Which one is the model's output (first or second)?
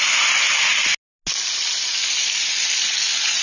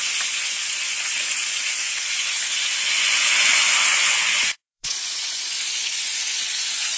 second